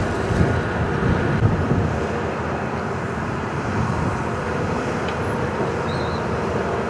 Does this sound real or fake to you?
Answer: fake